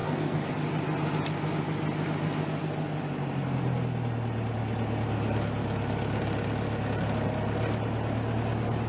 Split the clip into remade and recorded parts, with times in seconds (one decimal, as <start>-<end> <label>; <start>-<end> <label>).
0.0-0.5 remade; 0.5-8.9 recorded